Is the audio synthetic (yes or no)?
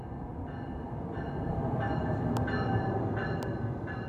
no